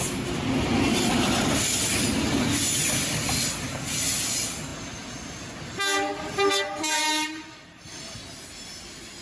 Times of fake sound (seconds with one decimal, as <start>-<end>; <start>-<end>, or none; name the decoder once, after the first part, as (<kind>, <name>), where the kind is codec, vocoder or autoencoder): none